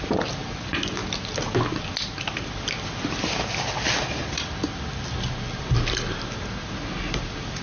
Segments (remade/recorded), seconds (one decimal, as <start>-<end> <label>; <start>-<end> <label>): 0.0-7.6 recorded